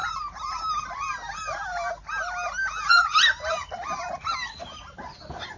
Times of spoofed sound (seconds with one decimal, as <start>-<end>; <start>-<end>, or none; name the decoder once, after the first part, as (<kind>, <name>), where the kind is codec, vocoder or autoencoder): none